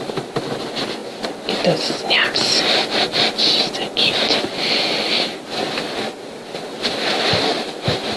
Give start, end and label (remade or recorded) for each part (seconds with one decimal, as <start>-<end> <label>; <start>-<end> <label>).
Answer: 0.0-8.2 recorded

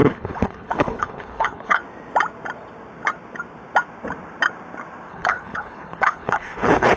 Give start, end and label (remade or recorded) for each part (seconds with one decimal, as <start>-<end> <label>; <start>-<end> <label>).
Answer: 0.0-1.8 remade; 1.8-5.1 recorded; 5.1-7.0 remade